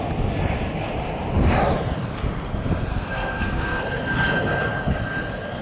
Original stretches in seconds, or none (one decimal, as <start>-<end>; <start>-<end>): 0.0-2.9; 3.8-5.6